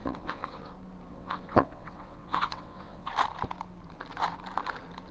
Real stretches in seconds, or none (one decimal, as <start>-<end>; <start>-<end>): 0.7-1.1; 3.1-5.1